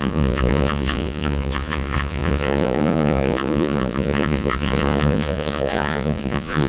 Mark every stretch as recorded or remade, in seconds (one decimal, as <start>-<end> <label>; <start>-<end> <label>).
0.0-6.7 remade